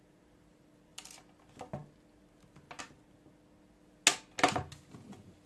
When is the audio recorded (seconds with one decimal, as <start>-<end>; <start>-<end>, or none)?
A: 0.0-5.5

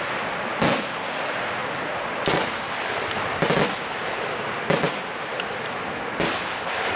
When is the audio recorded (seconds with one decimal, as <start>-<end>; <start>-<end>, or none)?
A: 0.0-7.0